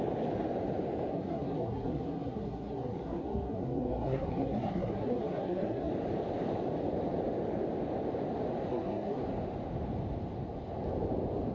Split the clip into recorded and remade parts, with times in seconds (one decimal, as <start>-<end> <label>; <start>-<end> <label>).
0.0-1.1 recorded; 1.1-5.9 remade; 5.9-8.7 recorded; 8.7-9.2 remade; 9.2-11.5 recorded